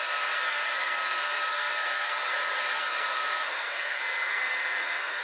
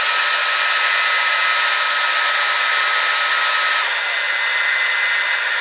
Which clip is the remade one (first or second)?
first